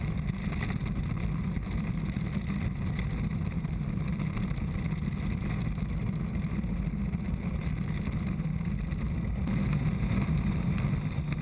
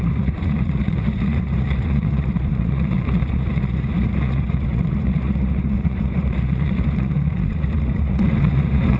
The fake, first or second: second